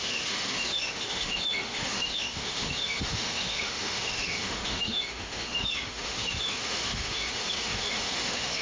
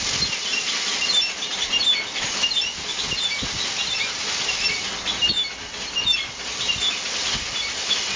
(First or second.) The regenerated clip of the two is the first